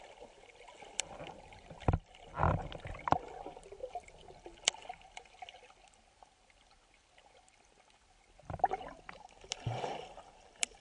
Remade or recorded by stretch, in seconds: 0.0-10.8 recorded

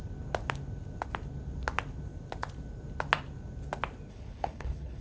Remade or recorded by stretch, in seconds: 0.0-4.1 recorded; 4.1-5.0 remade

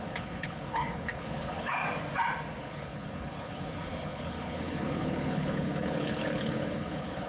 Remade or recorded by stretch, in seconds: 0.0-1.8 remade; 1.8-2.6 recorded; 2.6-7.3 remade

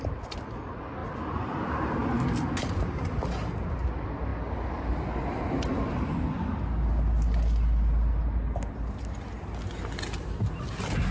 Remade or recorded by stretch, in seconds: 0.0-11.1 recorded